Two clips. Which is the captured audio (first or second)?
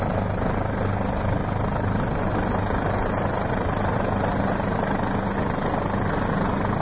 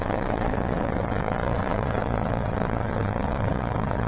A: first